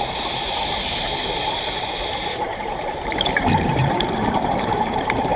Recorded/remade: remade